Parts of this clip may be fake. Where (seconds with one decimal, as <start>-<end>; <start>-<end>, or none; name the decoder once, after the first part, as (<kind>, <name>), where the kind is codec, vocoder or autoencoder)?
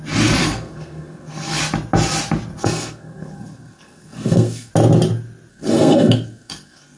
0.4-1.6 (codec, SNAC); 2.6-4.7; 5.5-7.0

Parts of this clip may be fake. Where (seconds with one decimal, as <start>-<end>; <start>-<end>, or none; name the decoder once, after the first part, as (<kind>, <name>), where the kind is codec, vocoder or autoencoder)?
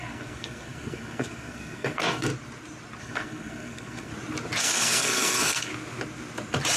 0.0-2.3 (codec, SNAC); 3.0-4.1; 4.6-5.7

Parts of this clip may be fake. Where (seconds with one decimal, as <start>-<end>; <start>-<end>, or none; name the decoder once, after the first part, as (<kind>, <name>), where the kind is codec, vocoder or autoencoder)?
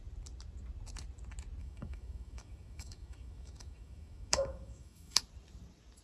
1.6-5.2 (autoencoder, DAC-VAE)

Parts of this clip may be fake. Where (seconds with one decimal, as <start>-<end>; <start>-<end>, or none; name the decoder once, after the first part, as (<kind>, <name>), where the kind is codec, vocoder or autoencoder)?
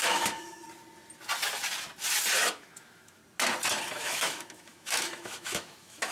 0.0-0.6 (autoencoder, DAC-VAE); 2.3-3.2; 4.0-6.1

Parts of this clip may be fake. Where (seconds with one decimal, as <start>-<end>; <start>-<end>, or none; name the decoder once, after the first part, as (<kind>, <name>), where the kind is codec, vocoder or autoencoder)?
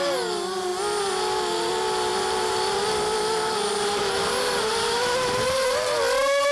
2.1-6.0 (vocoder, BigVGAN v2)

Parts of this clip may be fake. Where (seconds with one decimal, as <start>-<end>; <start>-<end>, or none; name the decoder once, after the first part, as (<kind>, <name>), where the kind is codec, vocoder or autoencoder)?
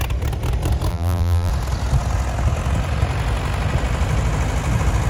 0.9-1.5 (vocoder, BigVGAN v2)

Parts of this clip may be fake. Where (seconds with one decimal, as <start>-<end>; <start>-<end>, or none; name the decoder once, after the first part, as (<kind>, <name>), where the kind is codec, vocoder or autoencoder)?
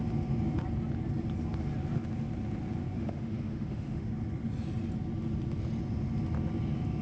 2.8-4.1 (autoencoder, DAC-VAE)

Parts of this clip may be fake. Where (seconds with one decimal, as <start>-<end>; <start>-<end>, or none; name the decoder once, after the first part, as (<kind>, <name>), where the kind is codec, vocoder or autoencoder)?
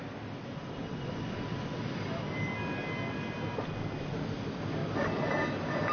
none